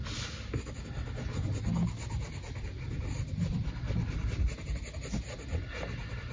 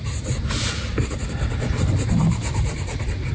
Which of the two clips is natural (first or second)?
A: first